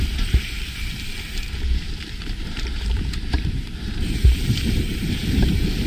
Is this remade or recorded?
remade